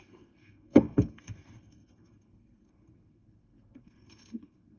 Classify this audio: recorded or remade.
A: remade